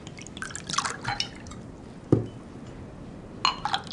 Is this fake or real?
real